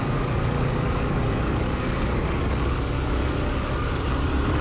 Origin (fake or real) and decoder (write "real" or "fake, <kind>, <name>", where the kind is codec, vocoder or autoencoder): fake, codec, DAC